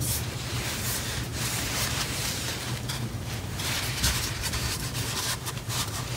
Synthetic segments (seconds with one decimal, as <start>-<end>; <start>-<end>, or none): 0.0-6.2

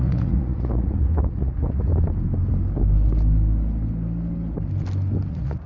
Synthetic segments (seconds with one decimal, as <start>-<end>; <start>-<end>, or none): 0.0-1.9; 5.3-5.7